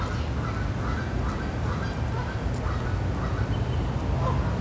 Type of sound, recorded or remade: recorded